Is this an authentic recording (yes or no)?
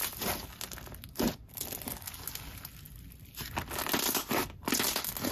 yes